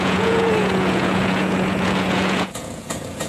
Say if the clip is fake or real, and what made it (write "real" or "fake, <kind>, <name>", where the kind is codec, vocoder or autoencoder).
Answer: fake, vocoder, Vocos